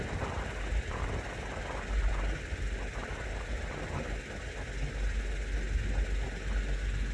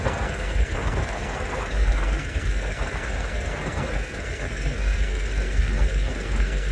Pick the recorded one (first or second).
first